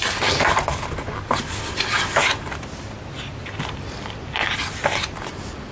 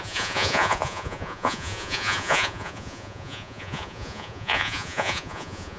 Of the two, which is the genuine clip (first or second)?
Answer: first